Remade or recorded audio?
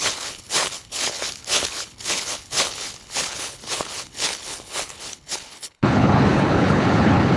remade